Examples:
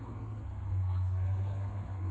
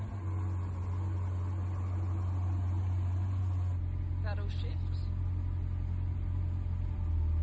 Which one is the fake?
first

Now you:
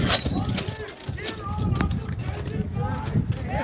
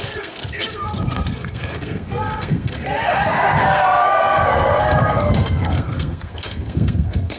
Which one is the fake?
second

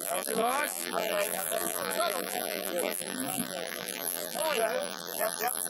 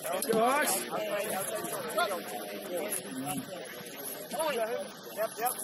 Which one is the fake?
first